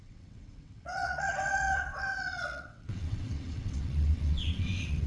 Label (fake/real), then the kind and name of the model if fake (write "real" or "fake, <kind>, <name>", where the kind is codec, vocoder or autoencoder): fake, vocoder, WaveNeXt